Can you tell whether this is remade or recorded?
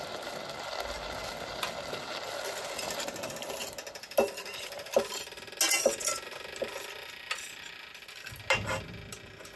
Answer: recorded